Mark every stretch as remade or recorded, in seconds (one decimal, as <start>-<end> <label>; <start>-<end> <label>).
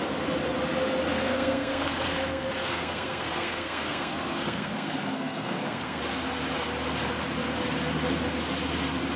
0.0-1.1 recorded; 1.1-6.0 remade; 6.0-9.2 recorded